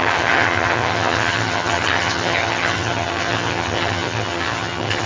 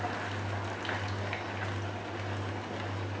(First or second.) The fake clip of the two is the first